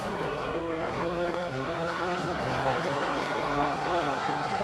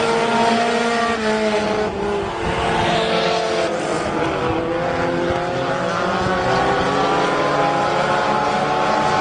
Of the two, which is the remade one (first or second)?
first